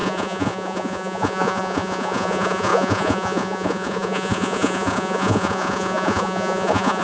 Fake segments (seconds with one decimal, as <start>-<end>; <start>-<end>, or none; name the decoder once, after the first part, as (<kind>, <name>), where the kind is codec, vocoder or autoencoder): 0.0-7.0 (vocoder, Vocos)